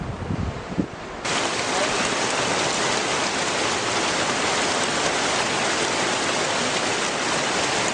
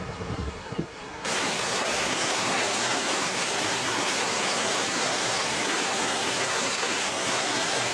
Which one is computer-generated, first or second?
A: second